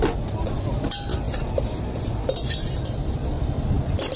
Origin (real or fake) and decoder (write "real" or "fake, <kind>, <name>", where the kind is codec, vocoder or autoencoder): fake, vocoder, BigVGAN v2